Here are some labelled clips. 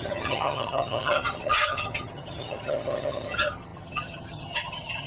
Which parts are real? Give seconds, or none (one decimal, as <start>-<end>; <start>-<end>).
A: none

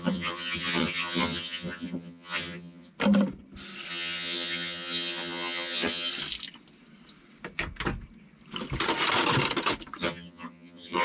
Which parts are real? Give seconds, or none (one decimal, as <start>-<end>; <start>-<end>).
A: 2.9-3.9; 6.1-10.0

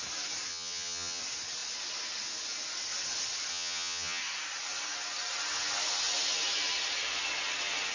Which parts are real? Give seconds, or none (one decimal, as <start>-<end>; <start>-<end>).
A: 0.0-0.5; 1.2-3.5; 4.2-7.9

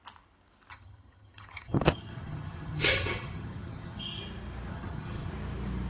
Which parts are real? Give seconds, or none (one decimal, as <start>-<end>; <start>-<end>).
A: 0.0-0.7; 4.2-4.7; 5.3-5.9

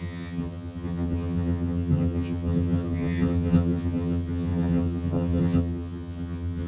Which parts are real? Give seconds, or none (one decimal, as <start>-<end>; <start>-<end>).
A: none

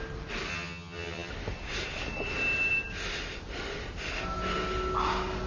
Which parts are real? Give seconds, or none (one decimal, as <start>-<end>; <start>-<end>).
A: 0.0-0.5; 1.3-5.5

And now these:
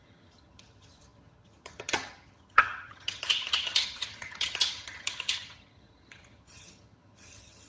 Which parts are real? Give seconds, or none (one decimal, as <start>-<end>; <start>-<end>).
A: none